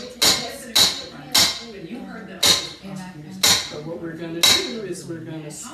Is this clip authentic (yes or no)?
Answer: yes